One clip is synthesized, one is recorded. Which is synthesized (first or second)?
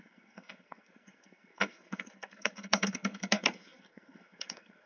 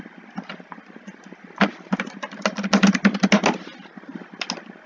first